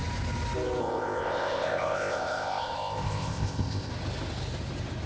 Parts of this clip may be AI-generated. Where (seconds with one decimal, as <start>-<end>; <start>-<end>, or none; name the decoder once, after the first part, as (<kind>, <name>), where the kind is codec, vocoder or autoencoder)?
0.8-3.9 (codec, ZipCodec)